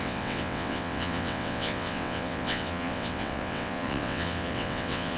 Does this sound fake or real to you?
fake